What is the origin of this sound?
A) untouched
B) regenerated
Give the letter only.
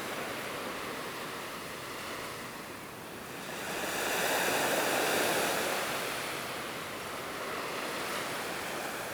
A